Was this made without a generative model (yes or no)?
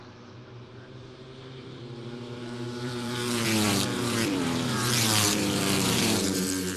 no